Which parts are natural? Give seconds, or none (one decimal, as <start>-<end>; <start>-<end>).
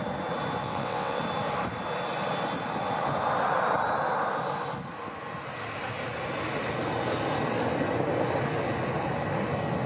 0.0-0.6; 1.2-9.9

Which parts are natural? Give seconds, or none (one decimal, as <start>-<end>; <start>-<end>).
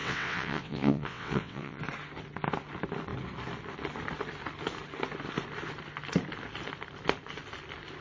1.8-8.0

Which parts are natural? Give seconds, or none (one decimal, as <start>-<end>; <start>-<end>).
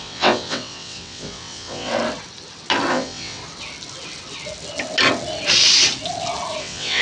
1.9-2.9; 3.4-6.6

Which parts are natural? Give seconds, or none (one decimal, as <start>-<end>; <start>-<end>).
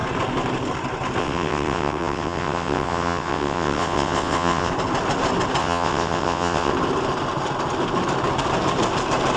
0.0-1.2; 4.7-5.6; 6.7-9.4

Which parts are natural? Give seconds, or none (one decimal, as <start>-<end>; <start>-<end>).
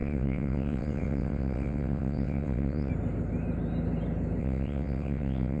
2.9-4.4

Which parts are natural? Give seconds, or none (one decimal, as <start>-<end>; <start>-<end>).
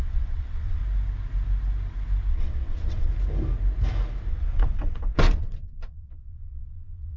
0.8-2.3; 3.1-4.3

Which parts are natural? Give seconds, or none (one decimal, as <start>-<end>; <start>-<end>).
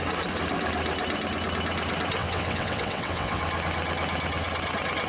0.0-2.2; 3.4-5.1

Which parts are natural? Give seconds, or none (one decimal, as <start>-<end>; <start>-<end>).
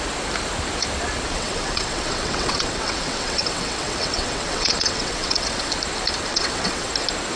0.0-1.3; 5.7-6.3; 6.9-7.4